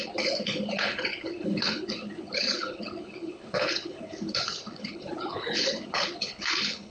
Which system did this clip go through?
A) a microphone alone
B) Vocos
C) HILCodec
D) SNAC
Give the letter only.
C